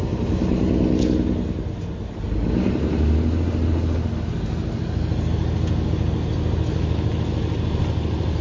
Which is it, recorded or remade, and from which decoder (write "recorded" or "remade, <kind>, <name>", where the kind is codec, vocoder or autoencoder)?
recorded